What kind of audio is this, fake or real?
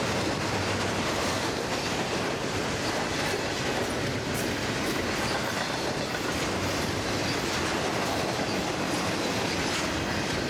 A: real